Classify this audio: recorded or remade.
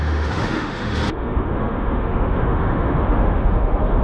remade